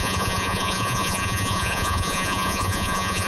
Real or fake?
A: fake